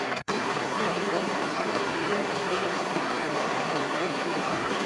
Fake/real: fake